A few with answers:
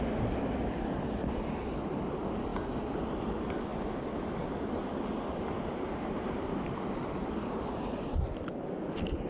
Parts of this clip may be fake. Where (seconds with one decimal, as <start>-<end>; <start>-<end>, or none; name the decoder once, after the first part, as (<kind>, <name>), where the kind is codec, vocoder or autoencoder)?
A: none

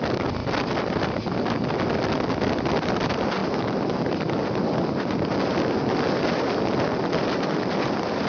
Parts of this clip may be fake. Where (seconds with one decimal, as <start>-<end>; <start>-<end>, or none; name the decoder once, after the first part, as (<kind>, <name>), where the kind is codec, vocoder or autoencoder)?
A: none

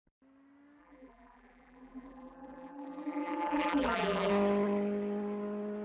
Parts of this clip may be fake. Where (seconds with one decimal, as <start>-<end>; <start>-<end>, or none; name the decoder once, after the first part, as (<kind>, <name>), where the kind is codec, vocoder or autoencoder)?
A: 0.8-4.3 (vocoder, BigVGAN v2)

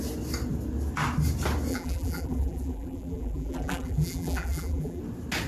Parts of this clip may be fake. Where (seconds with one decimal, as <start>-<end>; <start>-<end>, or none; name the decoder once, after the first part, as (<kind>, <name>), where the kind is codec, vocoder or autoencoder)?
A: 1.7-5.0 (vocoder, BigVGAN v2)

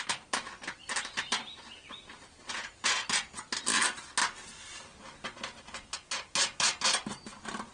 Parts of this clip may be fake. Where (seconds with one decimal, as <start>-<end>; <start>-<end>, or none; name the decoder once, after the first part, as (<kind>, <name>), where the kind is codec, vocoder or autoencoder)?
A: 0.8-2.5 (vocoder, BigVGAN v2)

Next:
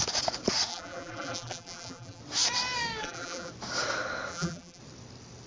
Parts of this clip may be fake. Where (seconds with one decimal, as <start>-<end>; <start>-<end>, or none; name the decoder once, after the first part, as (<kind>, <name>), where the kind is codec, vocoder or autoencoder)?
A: 0.7-2.2 (vocoder, BigVGAN v2); 3.0-3.5; 4.3-4.8

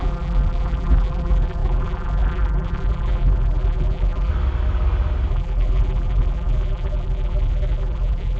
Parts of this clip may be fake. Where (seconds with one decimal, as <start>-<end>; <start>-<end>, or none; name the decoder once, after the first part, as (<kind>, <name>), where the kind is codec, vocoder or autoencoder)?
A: 0.0-4.3 (vocoder, BigVGAN v2); 5.3-8.4